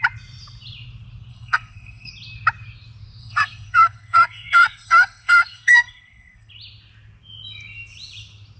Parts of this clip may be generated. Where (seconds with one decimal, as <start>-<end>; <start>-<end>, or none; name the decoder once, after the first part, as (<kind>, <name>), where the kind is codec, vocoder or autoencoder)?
1.3-2.1 (codec, SNAC); 3.2-6.5